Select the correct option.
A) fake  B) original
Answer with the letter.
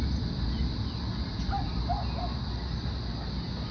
B